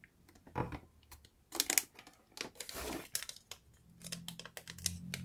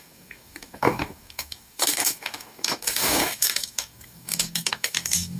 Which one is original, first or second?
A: first